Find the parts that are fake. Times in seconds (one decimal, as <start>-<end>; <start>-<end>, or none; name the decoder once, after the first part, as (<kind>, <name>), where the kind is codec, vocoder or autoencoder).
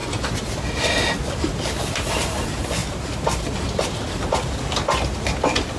0.8-2.8 (vocoder, BigVGAN v2); 5.2-5.8